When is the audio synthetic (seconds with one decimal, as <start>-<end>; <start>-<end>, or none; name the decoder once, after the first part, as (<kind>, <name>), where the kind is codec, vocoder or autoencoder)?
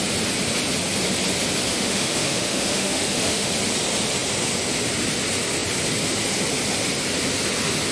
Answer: 1.7-3.5 (autoencoder, DAC-VAE)